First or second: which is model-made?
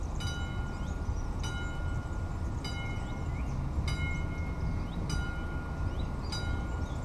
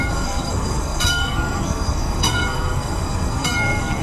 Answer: second